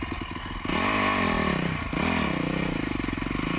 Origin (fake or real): real